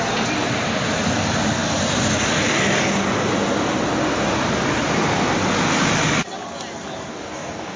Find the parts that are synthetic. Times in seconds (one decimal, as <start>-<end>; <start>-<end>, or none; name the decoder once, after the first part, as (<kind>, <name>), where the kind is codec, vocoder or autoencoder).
7.1-7.8 (codec, DAC)